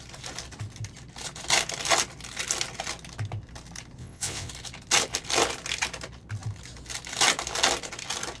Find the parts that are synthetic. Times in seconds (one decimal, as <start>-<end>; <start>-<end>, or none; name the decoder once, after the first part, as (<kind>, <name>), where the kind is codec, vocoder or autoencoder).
4.0-4.5 (vocoder, WaveNeXt)